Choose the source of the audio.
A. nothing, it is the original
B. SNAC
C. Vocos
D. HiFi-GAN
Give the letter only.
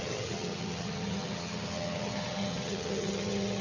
D